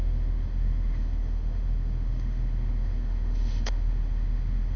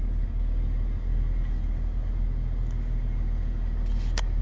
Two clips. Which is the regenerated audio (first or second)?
first